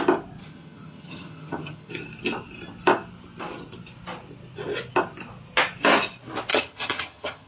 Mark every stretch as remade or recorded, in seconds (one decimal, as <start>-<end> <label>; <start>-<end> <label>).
0.0-0.4 recorded; 0.4-1.9 remade; 1.9-6.5 recorded; 6.5-7.5 remade